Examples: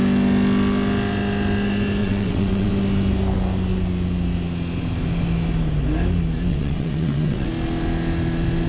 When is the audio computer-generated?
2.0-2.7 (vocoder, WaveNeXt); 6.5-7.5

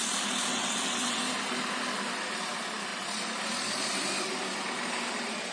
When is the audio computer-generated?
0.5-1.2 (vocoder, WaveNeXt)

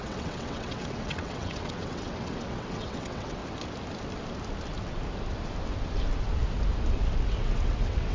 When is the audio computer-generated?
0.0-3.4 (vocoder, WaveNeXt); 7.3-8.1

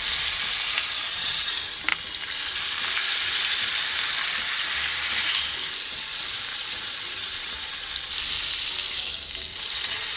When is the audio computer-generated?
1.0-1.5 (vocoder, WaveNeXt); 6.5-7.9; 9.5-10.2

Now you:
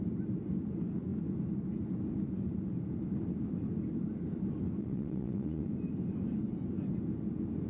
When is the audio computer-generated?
4.8-5.7 (vocoder, WaveNeXt)